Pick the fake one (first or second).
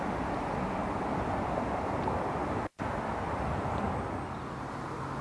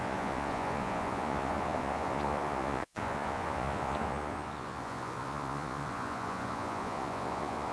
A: second